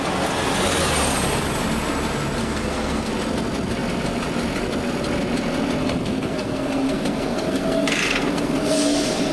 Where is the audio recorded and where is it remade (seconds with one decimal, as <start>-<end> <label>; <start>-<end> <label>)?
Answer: 0.0-2.4 recorded; 2.4-3.1 remade; 3.1-5.8 recorded; 5.8-9.3 remade